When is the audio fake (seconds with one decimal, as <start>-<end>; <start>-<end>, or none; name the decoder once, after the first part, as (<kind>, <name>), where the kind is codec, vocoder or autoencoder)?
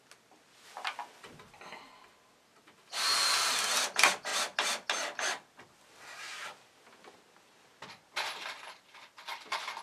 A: none